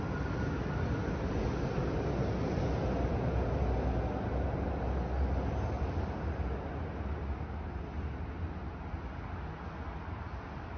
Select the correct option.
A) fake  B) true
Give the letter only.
B